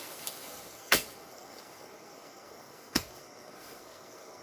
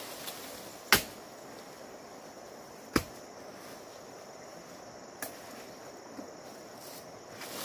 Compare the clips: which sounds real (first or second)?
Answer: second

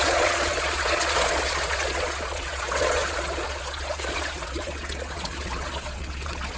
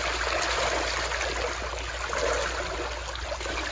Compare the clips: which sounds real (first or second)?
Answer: second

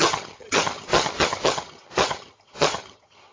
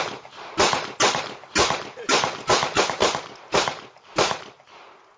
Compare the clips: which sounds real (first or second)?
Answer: second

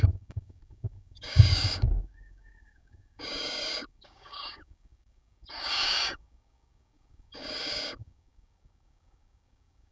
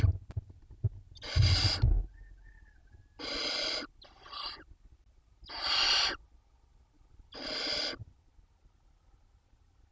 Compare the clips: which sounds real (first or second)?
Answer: second